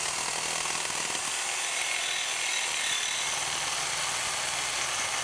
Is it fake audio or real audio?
real